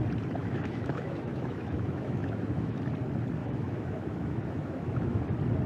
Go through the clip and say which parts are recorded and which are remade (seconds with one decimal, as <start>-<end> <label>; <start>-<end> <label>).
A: 0.0-0.4 recorded; 0.4-2.8 remade; 2.8-3.4 recorded; 3.4-5.2 remade; 5.2-5.7 recorded